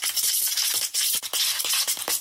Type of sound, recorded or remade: recorded